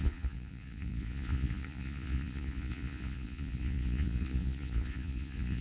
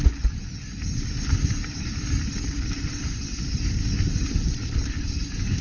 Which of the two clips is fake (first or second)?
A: first